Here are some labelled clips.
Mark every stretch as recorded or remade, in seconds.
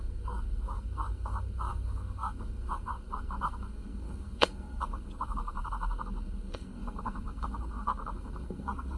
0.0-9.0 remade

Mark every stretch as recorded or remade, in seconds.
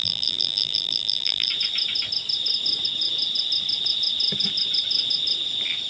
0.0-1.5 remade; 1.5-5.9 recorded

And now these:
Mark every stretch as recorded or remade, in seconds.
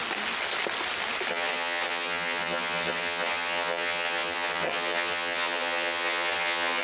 0.0-1.3 recorded; 1.3-6.8 remade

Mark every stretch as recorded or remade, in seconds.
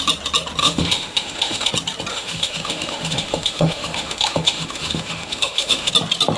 0.0-0.6 recorded; 0.6-1.7 remade; 1.7-2.1 recorded; 2.1-5.9 remade; 5.9-6.4 recorded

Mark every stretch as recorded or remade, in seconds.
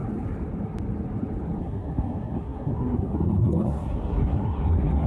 0.0-1.6 recorded; 1.6-5.1 remade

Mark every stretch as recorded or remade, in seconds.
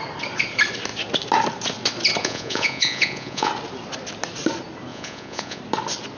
0.0-2.2 recorded; 2.2-3.5 remade; 3.5-4.9 recorded; 4.9-5.6 remade; 5.6-6.2 recorded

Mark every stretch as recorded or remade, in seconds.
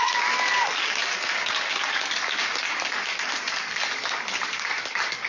0.0-5.3 remade